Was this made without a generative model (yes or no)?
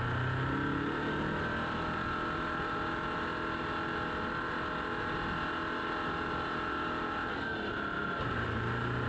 yes